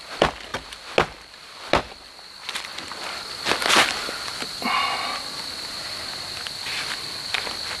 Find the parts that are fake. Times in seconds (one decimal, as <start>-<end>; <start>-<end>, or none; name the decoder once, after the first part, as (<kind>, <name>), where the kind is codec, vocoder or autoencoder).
none